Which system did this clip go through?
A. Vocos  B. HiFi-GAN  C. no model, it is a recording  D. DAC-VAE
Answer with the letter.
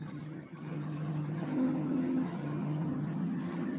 B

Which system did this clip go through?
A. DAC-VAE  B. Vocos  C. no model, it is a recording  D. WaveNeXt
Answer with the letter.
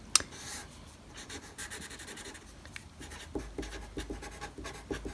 C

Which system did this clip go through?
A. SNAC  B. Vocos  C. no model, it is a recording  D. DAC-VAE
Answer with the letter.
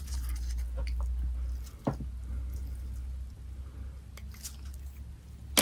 C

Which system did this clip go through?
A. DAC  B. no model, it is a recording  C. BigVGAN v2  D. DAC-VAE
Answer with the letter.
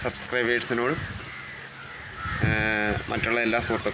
B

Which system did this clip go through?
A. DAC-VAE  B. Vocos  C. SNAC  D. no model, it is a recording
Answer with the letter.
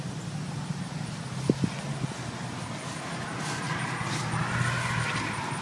D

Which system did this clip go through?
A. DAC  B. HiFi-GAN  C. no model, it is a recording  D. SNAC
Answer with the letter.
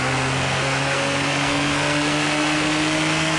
D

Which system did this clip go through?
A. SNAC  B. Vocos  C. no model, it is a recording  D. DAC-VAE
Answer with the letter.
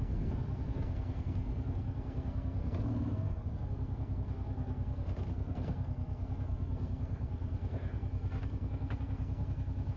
A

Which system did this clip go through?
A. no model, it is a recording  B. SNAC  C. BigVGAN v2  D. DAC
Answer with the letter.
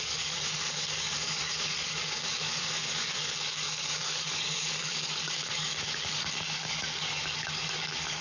D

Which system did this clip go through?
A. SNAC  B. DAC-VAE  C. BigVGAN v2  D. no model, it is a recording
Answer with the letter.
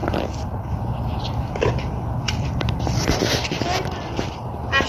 D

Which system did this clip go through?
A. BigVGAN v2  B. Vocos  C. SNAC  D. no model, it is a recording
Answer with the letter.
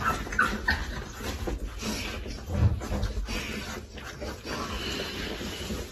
D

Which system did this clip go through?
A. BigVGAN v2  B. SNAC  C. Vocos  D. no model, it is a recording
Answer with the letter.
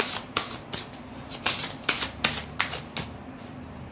D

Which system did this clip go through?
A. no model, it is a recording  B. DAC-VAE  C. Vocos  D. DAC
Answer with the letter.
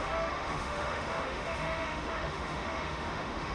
B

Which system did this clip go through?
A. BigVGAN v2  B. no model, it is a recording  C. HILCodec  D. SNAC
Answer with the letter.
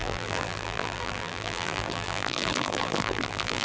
A